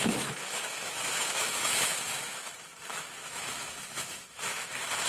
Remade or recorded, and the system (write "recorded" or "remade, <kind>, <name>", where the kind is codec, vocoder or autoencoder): remade, autoencoder, DAC-VAE